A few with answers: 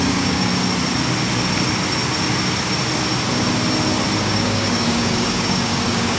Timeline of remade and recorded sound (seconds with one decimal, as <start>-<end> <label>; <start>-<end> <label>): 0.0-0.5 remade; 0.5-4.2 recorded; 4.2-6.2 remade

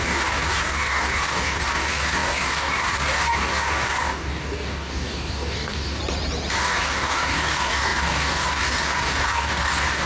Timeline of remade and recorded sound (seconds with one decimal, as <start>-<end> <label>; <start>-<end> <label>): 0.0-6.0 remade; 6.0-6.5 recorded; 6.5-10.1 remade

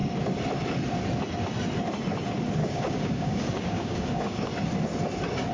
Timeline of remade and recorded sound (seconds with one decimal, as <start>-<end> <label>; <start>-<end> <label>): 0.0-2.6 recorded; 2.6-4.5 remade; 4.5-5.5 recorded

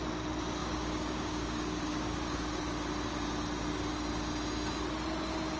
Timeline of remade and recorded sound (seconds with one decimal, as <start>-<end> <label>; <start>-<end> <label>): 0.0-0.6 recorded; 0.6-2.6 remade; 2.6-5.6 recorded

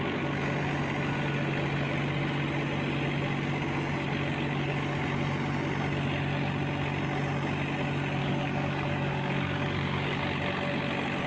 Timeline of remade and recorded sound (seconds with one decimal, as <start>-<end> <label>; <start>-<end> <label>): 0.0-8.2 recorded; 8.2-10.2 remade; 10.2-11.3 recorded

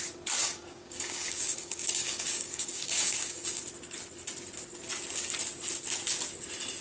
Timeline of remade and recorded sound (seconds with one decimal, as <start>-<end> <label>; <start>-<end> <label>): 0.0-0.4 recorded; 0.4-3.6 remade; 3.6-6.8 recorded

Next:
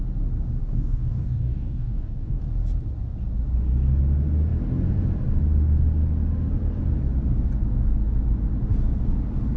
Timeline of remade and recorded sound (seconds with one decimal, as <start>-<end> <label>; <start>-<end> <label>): 0.0-0.6 recorded; 0.6-2.4 remade; 2.4-9.6 recorded

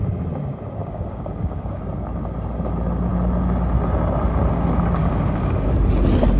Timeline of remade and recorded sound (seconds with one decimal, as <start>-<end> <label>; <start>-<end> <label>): 0.0-0.8 recorded; 0.8-1.8 remade; 1.8-5.0 recorded; 5.0-5.7 remade; 5.7-6.4 recorded